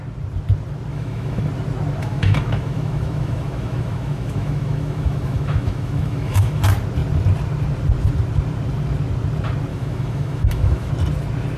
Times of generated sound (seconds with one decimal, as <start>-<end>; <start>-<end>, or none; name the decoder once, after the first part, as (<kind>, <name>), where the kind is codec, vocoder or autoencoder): 0.9-1.4 (autoencoder, DAC-VAE); 2.0-6.6; 9.7-10.9